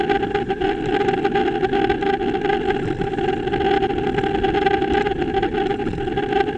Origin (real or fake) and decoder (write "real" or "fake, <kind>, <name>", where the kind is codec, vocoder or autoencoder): real